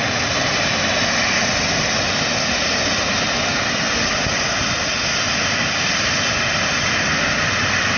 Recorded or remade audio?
recorded